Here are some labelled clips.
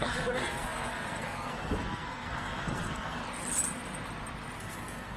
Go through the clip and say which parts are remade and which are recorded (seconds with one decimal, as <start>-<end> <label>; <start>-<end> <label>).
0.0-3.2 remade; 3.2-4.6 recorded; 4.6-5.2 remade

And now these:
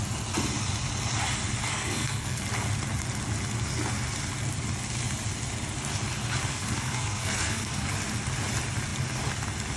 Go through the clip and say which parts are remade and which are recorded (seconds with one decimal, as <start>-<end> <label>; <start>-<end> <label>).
0.0-1.7 recorded; 1.7-2.4 remade; 2.4-6.5 recorded; 6.5-7.9 remade; 7.9-9.8 recorded

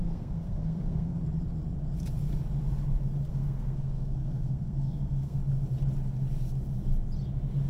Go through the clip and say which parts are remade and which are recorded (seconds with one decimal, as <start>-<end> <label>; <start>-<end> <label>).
0.0-1.2 remade; 1.2-3.3 recorded; 3.3-5.4 remade; 5.4-7.7 recorded

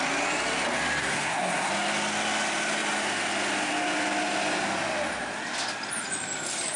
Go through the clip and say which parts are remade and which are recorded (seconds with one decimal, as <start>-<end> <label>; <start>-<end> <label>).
0.0-1.0 recorded; 1.0-1.7 remade; 1.7-6.8 recorded